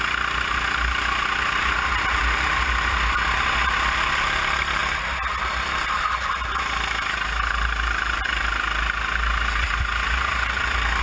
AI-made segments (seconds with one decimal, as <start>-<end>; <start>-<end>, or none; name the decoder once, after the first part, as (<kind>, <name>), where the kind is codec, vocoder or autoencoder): none